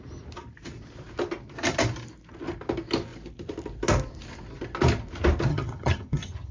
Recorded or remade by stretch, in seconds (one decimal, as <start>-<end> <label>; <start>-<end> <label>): 0.0-5.5 recorded; 5.5-6.5 remade